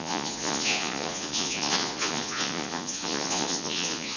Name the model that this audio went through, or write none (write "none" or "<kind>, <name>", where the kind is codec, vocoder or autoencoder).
vocoder, Vocos